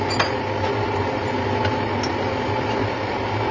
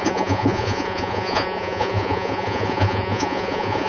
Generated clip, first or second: second